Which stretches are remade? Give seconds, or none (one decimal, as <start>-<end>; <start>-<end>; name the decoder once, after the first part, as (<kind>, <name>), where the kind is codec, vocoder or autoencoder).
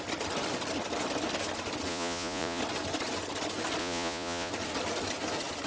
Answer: 1.9-2.6 (vocoder, Vocos); 3.8-4.5